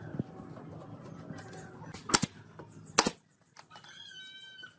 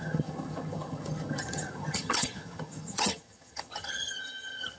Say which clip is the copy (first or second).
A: second